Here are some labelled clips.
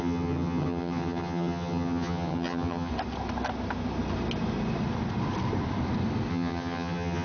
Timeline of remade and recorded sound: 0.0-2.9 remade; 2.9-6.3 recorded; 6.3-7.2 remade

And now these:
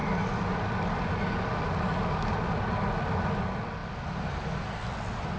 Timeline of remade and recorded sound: 0.0-5.4 recorded

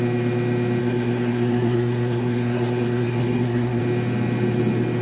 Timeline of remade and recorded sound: 0.0-0.8 recorded; 0.8-3.8 remade; 3.8-5.0 recorded

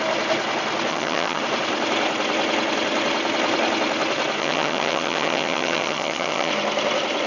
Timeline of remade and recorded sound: 0.0-0.9 recorded; 0.9-1.4 remade; 1.4-4.4 recorded; 4.4-6.5 remade; 6.5-7.3 recorded

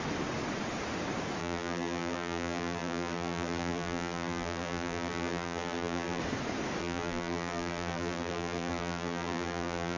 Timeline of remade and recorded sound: 0.0-1.4 recorded; 1.4-6.2 remade; 6.2-6.8 recorded; 6.8-10.0 remade

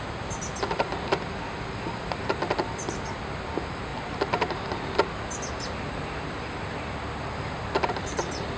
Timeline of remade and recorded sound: 0.0-8.6 recorded